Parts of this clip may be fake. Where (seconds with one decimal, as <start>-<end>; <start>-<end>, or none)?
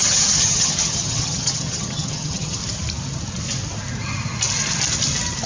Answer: 0.0-2.6